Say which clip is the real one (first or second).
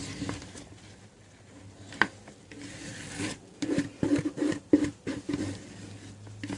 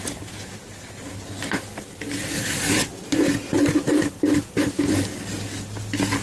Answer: second